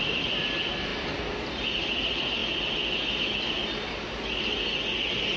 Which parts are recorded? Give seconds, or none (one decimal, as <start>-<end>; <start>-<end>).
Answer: 0.0-5.4